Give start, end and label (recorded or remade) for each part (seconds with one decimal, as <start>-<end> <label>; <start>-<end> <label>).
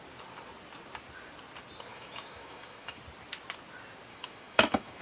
0.0-1.9 recorded; 1.9-3.0 remade; 3.0-4.1 recorded; 4.1-5.0 remade